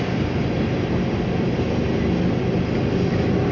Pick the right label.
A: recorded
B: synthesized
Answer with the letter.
A